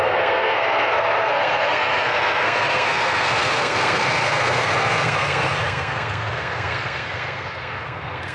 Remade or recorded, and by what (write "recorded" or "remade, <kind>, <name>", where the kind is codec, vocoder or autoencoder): remade, codec, SNAC